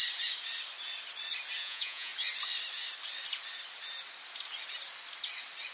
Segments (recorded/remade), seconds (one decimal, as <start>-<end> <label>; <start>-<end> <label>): 0.0-1.6 recorded; 1.6-2.1 remade; 2.1-5.7 recorded